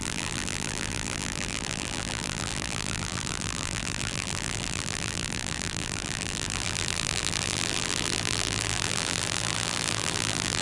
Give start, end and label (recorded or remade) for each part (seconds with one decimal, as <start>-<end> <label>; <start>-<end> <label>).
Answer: 0.0-10.6 remade